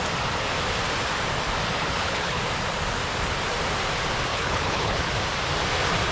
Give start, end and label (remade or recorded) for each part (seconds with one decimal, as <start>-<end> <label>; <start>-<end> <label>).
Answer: 0.0-1.8 recorded; 1.8-2.4 remade; 2.4-4.3 recorded; 4.3-5.1 remade; 5.1-6.1 recorded